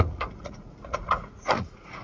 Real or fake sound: fake